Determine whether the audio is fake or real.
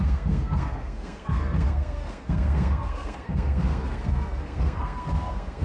fake